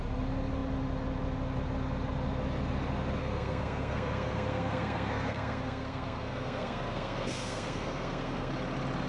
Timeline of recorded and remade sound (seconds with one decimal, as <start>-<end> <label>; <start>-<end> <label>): 0.0-3.2 recorded; 3.2-8.5 remade; 8.5-9.1 recorded